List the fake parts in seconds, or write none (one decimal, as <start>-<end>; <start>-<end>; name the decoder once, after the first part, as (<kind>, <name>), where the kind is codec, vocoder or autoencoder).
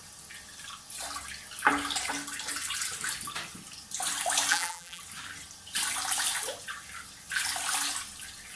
4.5-5.0 (vocoder, BigVGAN v2)